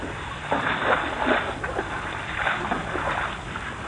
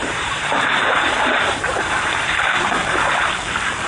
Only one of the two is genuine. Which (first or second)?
first